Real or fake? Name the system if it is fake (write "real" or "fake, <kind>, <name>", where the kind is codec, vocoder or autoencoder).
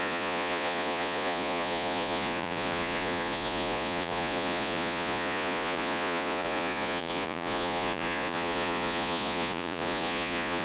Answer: fake, vocoder, Vocos